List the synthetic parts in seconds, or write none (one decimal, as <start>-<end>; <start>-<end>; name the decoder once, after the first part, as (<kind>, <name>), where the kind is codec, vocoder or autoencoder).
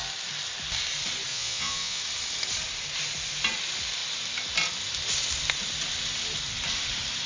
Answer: 1.3-2.0 (vocoder, Vocos)